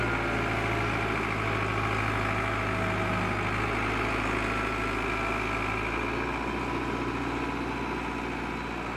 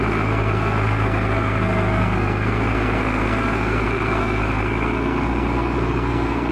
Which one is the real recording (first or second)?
first